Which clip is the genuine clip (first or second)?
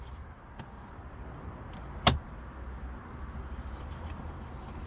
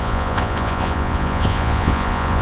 first